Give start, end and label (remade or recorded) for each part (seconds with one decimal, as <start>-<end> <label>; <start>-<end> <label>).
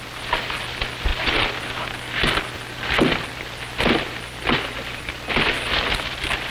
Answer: 0.0-6.5 recorded